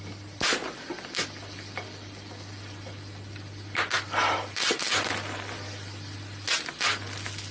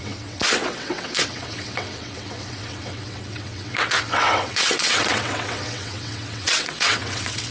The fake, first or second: second